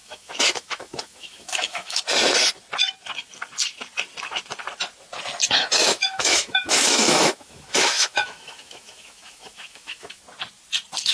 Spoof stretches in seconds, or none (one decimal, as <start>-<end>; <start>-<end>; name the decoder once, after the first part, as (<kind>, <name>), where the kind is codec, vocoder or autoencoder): 0.0-2.0 (autoencoder, DAC-VAE); 5.8-10.2